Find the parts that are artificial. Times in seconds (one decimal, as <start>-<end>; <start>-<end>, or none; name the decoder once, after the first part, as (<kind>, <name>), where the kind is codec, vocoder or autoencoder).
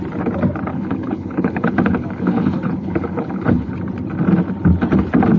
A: 0.7-3.7 (codec, HILCodec)